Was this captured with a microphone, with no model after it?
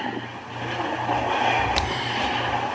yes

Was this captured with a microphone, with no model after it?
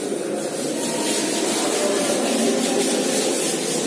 yes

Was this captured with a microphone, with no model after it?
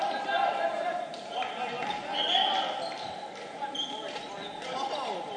yes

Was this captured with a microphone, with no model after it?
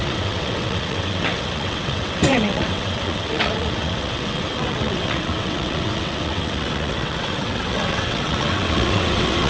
no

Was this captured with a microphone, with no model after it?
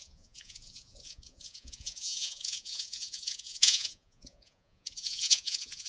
no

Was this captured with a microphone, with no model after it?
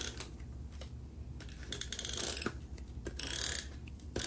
yes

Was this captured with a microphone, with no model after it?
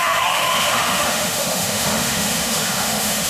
no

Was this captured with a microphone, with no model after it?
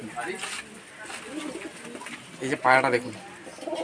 yes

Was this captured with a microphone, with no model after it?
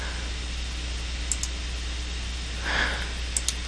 yes